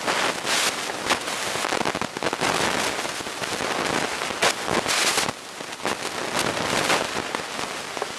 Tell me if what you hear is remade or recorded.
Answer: recorded